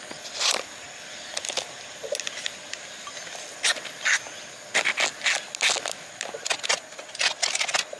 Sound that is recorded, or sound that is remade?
recorded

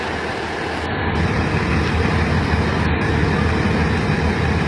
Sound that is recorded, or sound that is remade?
recorded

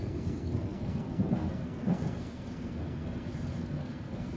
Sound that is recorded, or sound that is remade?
remade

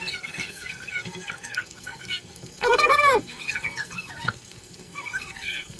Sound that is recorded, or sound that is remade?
remade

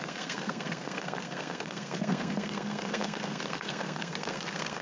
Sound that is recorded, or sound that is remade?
remade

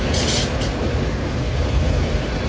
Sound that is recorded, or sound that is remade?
recorded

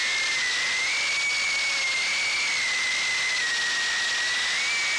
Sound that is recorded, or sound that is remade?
recorded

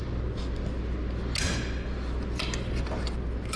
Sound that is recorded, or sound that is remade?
recorded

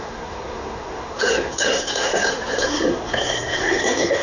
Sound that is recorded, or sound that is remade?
remade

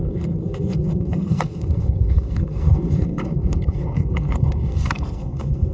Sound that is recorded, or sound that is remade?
remade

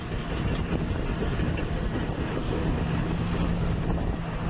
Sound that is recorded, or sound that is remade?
recorded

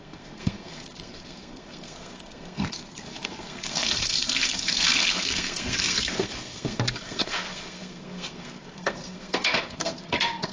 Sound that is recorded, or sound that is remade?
remade